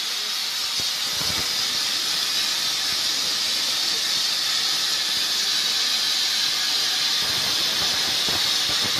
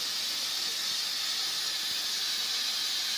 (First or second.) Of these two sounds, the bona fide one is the second